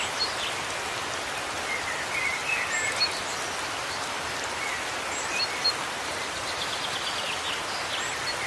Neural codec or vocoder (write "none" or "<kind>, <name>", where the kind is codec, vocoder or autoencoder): none